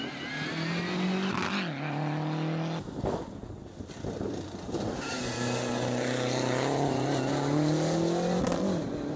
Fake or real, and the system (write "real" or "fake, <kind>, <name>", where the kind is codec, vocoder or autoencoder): real